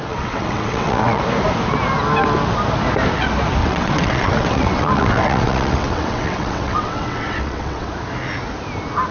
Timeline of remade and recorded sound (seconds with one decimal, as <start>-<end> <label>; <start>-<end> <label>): 0.0-1.2 remade; 1.2-3.6 recorded; 3.6-7.9 remade; 7.9-9.1 recorded